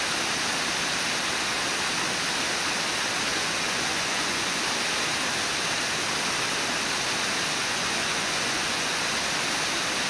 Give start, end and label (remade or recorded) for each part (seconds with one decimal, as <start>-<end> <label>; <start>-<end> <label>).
0.0-3.3 recorded; 3.3-4.6 remade; 4.6-7.6 recorded; 7.6-9.0 remade; 9.0-10.1 recorded